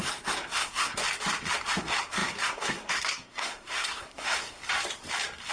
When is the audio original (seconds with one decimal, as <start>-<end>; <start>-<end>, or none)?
1.0-1.8; 4.6-5.5